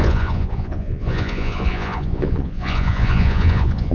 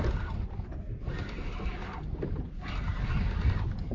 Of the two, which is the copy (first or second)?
first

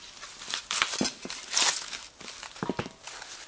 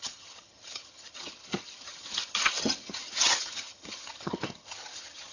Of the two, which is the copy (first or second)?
second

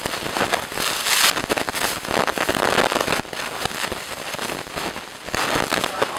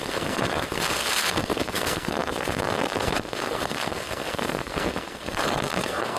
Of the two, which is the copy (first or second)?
second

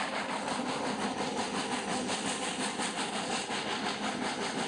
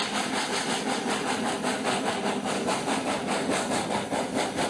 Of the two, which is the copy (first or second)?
second